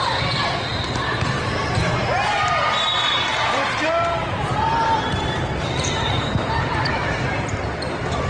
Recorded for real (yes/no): no